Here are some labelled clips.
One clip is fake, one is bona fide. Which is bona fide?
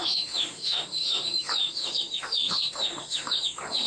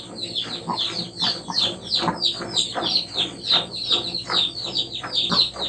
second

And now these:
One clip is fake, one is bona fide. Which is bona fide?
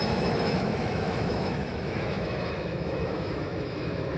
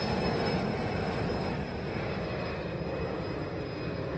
second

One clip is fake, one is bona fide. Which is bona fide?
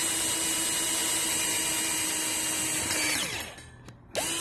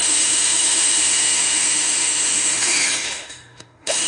first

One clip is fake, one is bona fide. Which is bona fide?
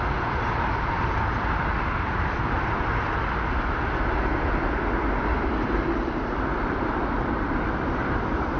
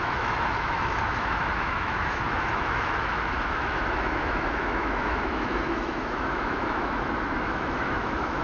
first